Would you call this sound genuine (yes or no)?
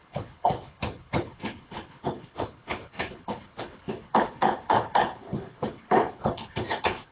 no